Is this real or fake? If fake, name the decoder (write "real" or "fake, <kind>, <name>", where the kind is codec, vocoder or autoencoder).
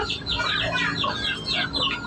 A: real